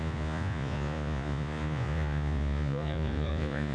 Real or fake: fake